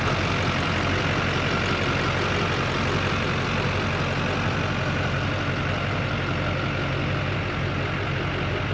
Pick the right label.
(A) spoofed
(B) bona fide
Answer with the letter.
B